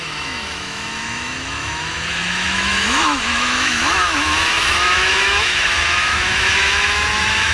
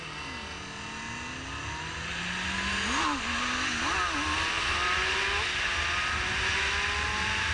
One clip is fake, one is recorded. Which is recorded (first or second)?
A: second